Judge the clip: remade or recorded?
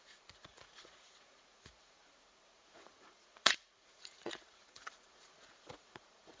remade